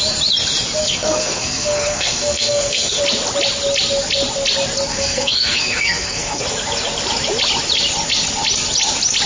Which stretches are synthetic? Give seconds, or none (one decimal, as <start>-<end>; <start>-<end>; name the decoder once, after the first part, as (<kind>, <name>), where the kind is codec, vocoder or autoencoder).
0.8-3.0 (codec, SNAC); 4.9-6.4